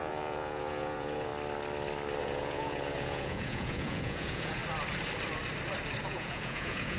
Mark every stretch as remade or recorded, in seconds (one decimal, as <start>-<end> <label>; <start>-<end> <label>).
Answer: 0.0-1.3 remade; 1.3-2.2 recorded; 2.2-4.6 remade; 4.6-6.1 recorded; 6.1-7.0 remade